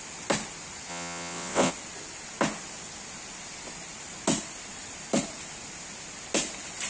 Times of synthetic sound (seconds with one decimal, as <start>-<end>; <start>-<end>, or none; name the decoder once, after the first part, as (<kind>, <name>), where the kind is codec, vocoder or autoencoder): 0.9-1.7 (vocoder, WaveNeXt)